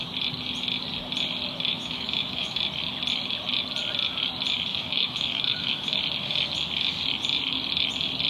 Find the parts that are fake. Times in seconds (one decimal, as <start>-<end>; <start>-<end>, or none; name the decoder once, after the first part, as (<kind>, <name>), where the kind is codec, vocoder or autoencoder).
1.7-2.6 (autoencoder, DAC-VAE); 4.7-6.0